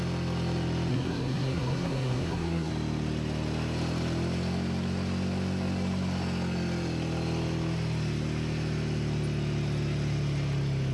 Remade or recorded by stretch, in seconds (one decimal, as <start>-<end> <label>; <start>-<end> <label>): 0.0-0.9 recorded; 0.9-2.7 remade; 2.7-10.9 recorded